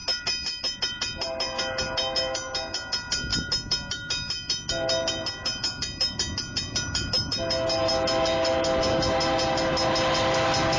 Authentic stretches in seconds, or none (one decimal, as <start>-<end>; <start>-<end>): 0.0-10.8